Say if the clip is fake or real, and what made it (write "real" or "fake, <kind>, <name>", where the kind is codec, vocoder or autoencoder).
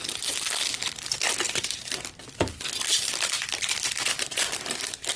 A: fake, vocoder, BigVGAN v2